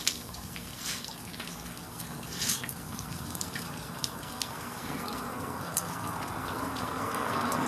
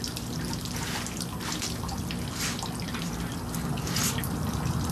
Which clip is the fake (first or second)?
first